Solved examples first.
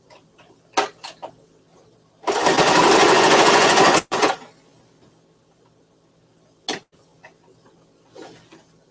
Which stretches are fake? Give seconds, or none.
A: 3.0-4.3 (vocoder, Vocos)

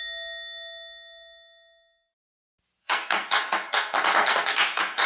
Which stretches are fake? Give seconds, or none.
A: 2.8-5.1 (codec, SNAC)

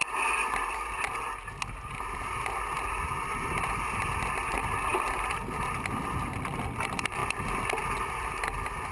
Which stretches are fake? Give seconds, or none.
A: none

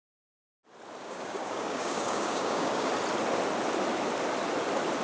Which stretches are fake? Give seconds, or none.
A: 1.0-2.9 (codec, DAC)

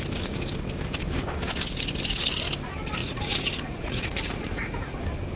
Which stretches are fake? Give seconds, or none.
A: 3.0-5.0 (vocoder, Vocos)